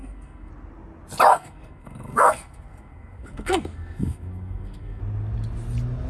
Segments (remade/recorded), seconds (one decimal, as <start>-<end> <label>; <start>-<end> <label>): 0.0-0.5 remade; 0.5-1.3 recorded; 1.3-5.0 remade; 5.0-6.1 recorded